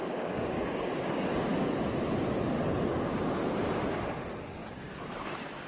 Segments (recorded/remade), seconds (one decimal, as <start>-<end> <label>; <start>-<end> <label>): 0.0-1.5 remade; 1.5-2.9 recorded; 2.9-3.4 remade; 3.4-4.8 recorded; 4.8-5.7 remade